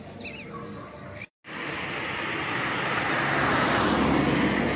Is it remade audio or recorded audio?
recorded